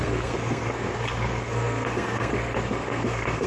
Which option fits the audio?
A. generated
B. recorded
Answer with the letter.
A